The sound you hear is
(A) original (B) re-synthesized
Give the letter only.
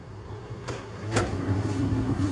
B